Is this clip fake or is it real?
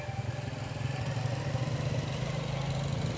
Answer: real